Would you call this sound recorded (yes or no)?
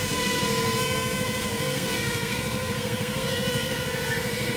no